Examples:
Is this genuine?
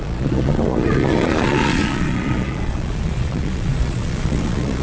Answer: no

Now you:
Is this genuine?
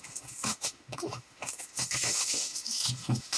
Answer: no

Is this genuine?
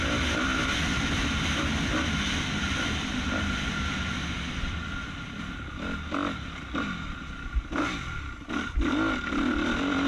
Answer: yes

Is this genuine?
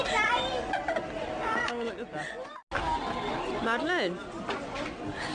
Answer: yes